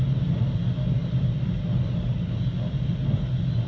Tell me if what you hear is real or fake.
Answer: real